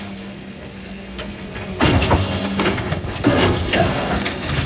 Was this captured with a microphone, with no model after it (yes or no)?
no